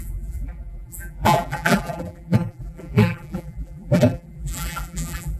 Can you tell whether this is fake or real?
fake